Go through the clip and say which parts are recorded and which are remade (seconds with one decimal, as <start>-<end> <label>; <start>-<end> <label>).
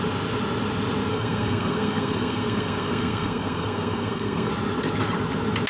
0.0-1.1 recorded; 1.1-4.5 remade; 4.5-5.7 recorded